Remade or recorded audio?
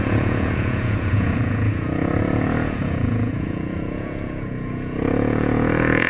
remade